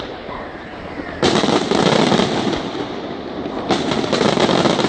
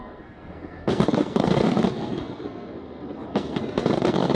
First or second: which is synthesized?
second